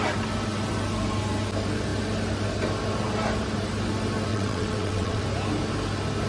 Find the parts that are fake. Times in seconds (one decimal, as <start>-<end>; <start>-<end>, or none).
4.3-5.2